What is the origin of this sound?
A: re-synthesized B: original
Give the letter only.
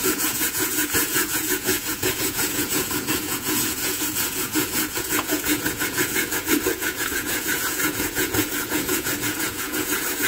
A